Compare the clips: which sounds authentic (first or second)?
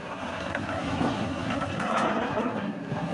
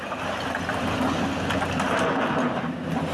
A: second